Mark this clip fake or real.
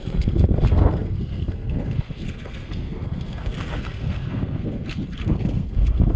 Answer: fake